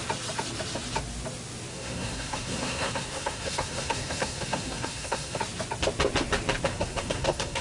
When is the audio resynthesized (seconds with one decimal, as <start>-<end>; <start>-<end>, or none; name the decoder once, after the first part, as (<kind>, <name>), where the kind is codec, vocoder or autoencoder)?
1.7-5.4 (codec, SNAC); 6.7-7.6